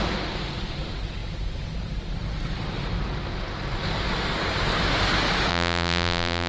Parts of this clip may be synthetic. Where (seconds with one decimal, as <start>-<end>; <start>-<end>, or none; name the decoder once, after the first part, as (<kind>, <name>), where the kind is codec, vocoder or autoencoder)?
5.5-6.5 (vocoder, BigVGAN v2)